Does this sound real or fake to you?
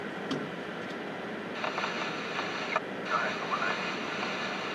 real